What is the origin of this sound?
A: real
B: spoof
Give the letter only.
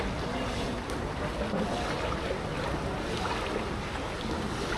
A